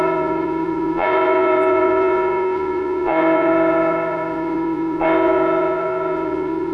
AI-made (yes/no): yes